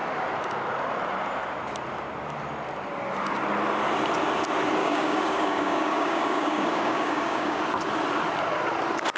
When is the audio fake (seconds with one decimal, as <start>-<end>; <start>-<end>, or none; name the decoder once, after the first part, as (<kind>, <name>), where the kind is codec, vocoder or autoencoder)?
4.8-7.6 (codec, DAC)

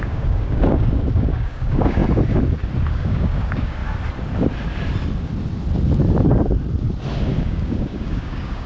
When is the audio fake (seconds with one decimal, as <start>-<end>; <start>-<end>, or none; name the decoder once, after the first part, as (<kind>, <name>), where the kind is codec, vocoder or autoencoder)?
0.0-2.0 (codec, DAC); 2.9-3.8; 7.4-8.7

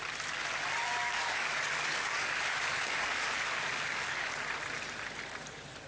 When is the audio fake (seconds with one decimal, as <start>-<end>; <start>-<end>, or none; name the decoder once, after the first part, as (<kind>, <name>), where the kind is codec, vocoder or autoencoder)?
0.8-4.3 (codec, DAC)

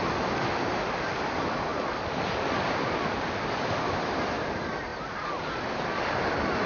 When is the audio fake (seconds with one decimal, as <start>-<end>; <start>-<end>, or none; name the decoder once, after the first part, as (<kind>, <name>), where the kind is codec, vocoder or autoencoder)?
none